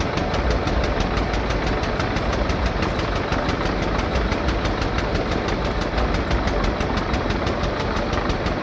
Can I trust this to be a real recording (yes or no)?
yes